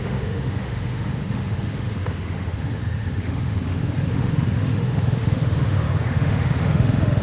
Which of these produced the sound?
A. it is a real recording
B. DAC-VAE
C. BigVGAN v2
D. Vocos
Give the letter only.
B